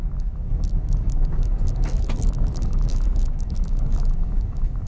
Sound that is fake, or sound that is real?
fake